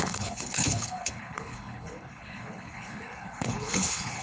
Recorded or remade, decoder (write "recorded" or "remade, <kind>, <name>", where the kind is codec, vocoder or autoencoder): remade, codec, HILCodec